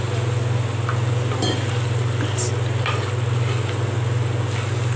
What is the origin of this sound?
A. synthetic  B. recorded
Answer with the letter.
B